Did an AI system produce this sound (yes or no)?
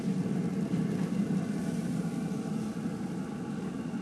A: no